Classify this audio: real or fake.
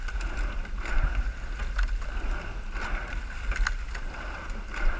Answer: real